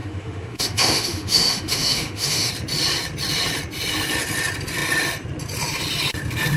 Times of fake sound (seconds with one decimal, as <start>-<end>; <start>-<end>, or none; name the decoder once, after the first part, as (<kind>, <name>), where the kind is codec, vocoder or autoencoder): 0.0-2.5 (autoencoder, DAC-VAE)